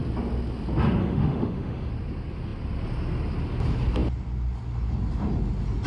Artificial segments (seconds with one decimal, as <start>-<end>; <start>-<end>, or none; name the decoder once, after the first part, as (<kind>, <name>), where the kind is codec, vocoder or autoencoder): 1.0-1.9 (autoencoder, DAC-VAE)

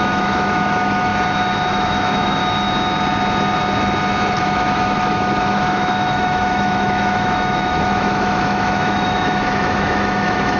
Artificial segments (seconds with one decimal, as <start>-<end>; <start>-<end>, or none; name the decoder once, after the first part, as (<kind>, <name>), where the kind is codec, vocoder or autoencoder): 0.0-1.1 (autoencoder, DAC-VAE); 1.7-2.4; 4.4-10.6

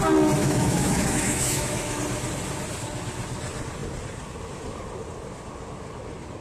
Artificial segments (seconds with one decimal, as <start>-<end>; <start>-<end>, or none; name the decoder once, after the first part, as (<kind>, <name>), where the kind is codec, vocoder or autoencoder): 0.4-2.0 (autoencoder, DAC-VAE)

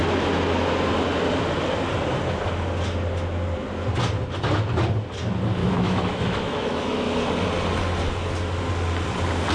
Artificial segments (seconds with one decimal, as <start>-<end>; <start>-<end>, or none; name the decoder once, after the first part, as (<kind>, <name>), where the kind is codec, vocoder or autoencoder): 5.6-7.2 (autoencoder, DAC-VAE)

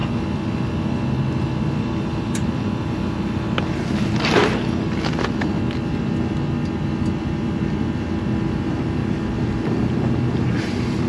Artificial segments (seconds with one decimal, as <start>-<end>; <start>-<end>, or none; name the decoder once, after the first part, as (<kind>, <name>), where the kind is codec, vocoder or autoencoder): none

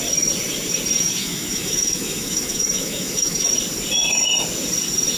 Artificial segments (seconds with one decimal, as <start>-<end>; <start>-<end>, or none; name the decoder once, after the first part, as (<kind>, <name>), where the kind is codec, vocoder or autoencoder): 1.2-3.5 (autoencoder, DAC-VAE)

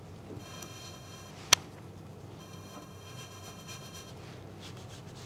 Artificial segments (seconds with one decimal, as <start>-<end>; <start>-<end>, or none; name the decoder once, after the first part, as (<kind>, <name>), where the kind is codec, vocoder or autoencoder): 0.4-1.3 (autoencoder, DAC-VAE); 2.4-4.1

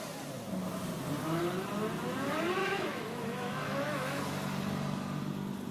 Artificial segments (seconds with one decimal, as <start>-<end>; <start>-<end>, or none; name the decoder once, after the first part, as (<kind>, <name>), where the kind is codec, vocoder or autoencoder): 2.6-4.2 (autoencoder, DAC-VAE)